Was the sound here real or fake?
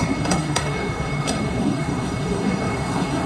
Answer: fake